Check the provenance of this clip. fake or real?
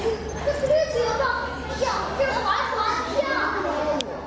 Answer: real